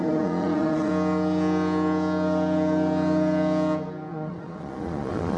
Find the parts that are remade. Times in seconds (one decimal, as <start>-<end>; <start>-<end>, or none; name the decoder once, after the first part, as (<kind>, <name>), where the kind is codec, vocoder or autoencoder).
0.0-0.9 (vocoder, Vocos); 4.1-5.4